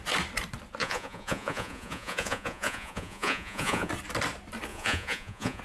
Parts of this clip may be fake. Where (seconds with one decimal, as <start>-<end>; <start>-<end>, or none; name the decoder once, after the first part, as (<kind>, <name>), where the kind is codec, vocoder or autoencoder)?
0.8-3.9 (vocoder, Vocos); 4.7-5.6